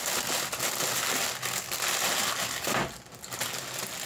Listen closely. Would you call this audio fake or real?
real